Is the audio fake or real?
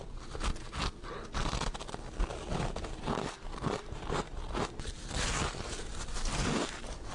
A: real